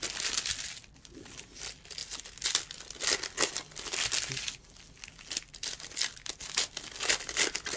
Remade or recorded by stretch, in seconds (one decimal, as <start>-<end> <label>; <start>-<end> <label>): 0.0-7.8 recorded